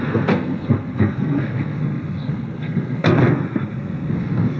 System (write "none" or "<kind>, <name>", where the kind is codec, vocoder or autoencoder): codec, SNAC